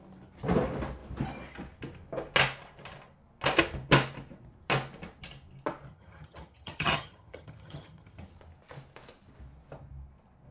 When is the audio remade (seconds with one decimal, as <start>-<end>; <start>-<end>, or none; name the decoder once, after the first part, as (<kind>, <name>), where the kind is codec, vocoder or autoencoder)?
5.9-8.3 (vocoder, HiFi-GAN)